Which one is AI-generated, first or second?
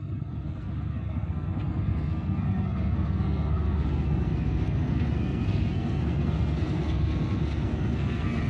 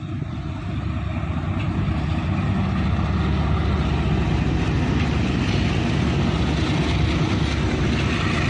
first